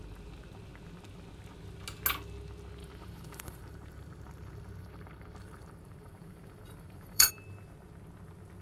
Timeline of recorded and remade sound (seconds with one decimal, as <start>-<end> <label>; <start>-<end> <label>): 0.0-2.8 recorded; 2.8-7.3 remade; 7.3-8.6 recorded